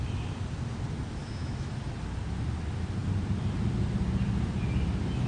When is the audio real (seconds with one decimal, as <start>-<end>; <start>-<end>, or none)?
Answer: 0.0-1.2; 1.7-5.3